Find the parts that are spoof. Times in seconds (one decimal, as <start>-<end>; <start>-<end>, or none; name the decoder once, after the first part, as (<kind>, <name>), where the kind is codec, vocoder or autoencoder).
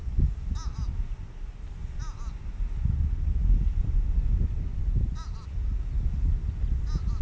none